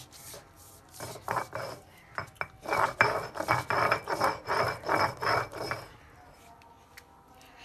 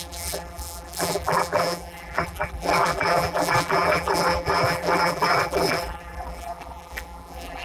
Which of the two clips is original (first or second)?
first